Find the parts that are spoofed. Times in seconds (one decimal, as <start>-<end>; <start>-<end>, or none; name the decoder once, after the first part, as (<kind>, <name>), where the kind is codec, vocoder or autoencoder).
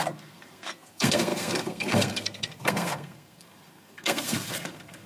0.0-5.1 (codec, SNAC)